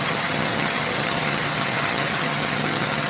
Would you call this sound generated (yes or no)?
yes